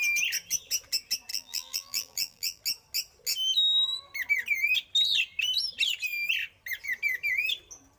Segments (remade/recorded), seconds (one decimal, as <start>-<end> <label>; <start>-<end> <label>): 0.0-1.3 recorded; 1.3-2.6 remade; 2.6-8.0 recorded